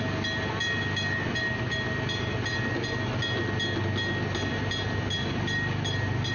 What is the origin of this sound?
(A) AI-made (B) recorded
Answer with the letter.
B